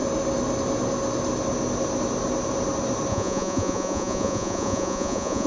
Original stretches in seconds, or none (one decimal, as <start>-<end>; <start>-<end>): 0.0-3.1